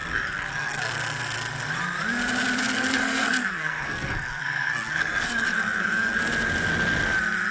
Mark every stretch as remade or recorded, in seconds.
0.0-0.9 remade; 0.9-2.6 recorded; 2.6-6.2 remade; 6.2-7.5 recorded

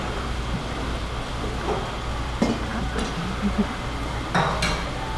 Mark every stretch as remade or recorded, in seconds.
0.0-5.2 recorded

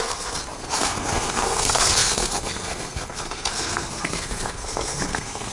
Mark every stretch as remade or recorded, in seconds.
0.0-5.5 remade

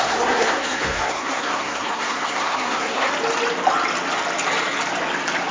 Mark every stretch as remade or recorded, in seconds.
0.0-3.1 remade; 3.1-5.5 recorded

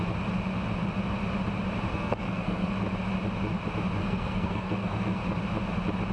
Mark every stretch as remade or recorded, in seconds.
0.0-1.9 recorded; 1.9-2.7 remade; 2.7-4.0 recorded; 4.0-5.2 remade; 5.2-6.1 recorded

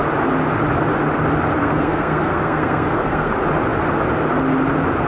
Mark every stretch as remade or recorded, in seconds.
0.0-1.6 recorded; 1.6-3.3 remade; 3.3-5.1 recorded

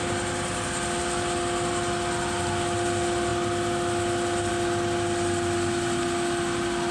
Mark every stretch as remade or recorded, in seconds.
0.0-6.9 recorded

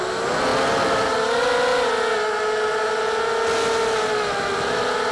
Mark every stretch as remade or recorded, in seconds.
0.0-5.1 recorded